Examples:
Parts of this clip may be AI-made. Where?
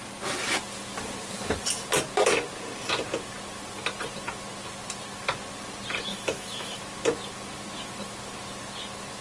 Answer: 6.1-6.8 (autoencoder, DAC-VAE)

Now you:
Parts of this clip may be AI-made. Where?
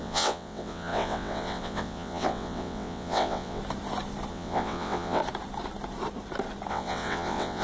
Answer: 0.0-3.6 (vocoder, WaveNeXt); 4.3-5.2; 6.7-7.6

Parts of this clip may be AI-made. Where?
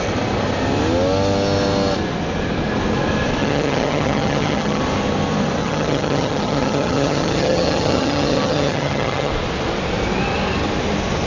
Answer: 3.4-4.8 (vocoder, HiFi-GAN); 5.6-9.3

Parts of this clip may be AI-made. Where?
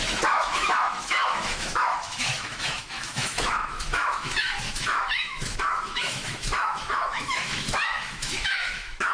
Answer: 0.0-9.1 (autoencoder, DAC-VAE)